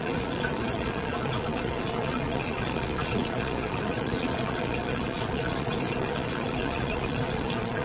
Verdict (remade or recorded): remade